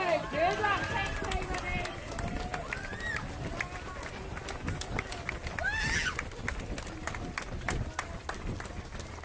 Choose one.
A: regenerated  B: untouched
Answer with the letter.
B